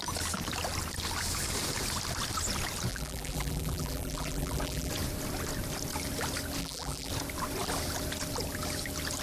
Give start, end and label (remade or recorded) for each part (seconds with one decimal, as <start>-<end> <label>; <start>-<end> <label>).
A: 0.0-2.9 recorded; 2.9-4.9 remade; 4.9-6.6 recorded; 6.6-7.1 remade; 7.1-9.2 recorded